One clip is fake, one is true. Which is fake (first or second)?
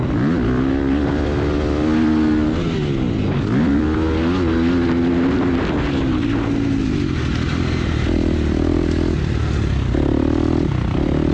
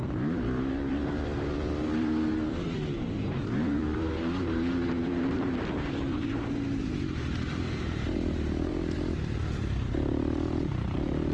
second